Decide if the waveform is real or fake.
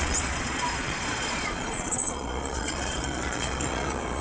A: fake